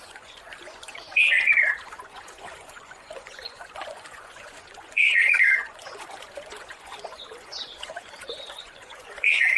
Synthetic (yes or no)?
yes